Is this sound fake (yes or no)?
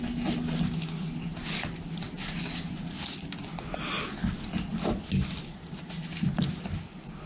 no